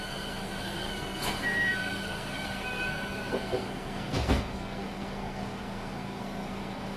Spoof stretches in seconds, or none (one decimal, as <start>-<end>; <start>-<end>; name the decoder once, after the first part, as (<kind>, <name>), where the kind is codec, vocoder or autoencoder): 0.0-7.0 (codec, SNAC)